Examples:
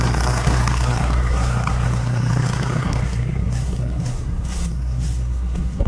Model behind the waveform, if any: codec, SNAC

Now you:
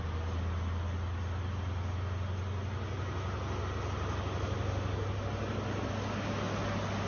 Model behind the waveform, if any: none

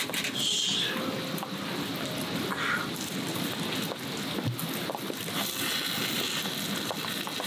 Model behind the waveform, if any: none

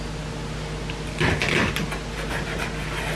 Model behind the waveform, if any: none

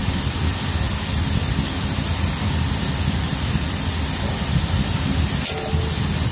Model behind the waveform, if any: none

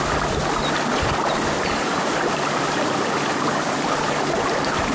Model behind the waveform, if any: none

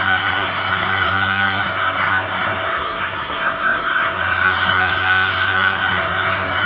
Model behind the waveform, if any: codec, SNAC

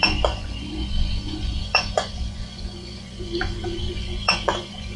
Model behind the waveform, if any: vocoder, Vocos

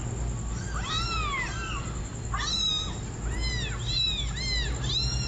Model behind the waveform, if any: none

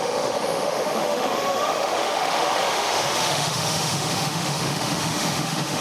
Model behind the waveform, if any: autoencoder, DAC-VAE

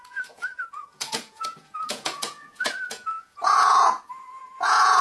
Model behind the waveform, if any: vocoder, Vocos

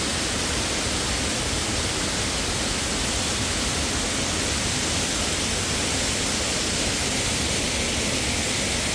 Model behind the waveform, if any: none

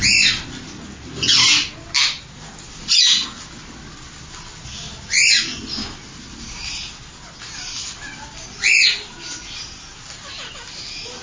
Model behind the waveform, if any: none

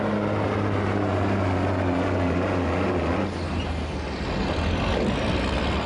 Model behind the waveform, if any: none